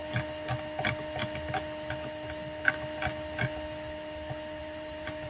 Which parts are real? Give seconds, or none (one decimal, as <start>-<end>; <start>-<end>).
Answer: 0.0-4.6